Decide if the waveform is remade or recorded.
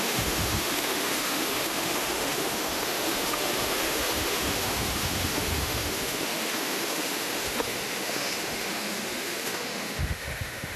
remade